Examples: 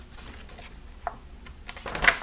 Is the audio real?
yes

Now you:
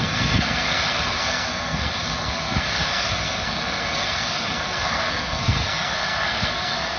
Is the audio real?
no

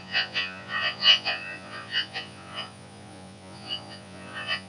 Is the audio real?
no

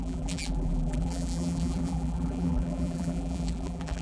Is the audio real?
no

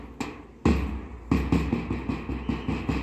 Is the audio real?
yes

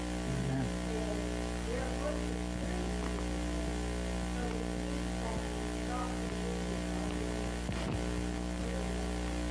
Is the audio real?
yes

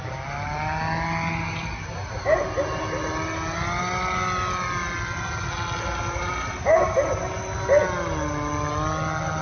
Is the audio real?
yes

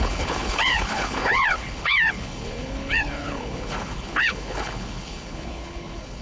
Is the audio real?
no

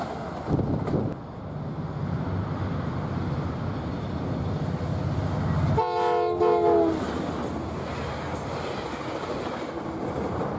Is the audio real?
yes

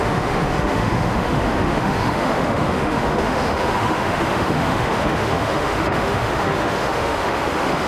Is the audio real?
no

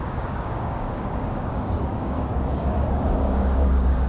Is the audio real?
no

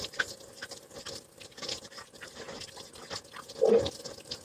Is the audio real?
yes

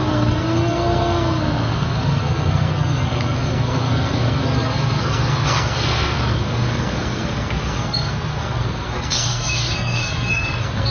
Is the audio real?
no